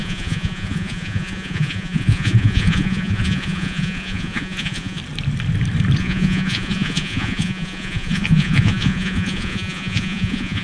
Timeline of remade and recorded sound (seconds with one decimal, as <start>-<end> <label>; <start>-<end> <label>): 0.0-5.0 remade; 5.0-6.0 recorded; 6.0-10.6 remade